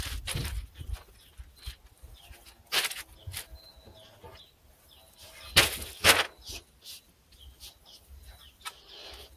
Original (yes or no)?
yes